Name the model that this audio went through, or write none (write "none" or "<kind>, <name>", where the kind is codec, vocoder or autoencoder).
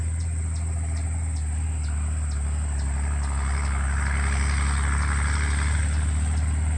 none